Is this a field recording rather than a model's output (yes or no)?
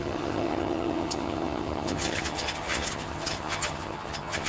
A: no